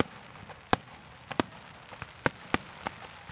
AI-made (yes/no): no